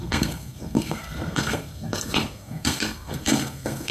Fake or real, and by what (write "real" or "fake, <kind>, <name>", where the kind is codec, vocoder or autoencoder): fake, codec, SNAC